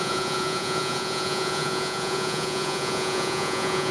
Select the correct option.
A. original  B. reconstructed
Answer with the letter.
B